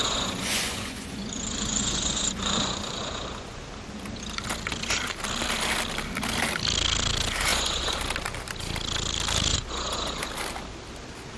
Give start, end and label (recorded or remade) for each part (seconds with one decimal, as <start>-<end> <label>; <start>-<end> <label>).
0.0-3.6 remade; 3.6-7.5 recorded; 7.5-8.0 remade; 8.0-9.5 recorded; 9.5-10.3 remade; 10.3-11.4 recorded